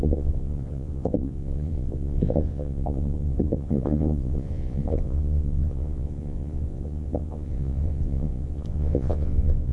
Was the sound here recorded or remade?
remade